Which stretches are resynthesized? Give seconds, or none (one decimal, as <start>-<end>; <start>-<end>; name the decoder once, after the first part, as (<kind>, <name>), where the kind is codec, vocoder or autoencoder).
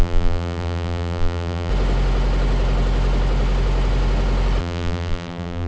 0.0-1.7 (vocoder, BigVGAN v2); 4.6-5.7